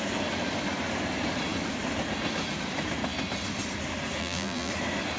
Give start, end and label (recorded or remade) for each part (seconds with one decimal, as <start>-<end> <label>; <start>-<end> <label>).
0.0-4.2 recorded; 4.2-4.7 remade; 4.7-5.2 recorded